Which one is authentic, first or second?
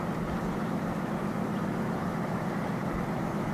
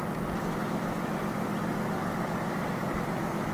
second